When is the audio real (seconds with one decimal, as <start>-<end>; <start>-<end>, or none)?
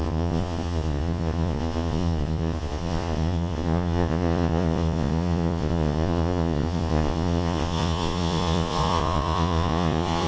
none